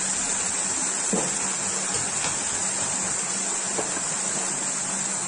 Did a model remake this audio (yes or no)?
no